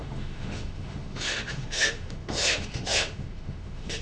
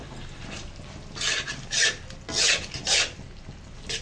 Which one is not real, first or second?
first